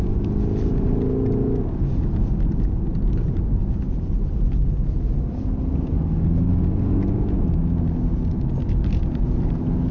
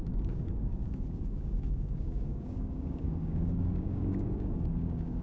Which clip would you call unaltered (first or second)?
first